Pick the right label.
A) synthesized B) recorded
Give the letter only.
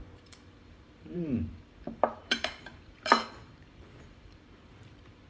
A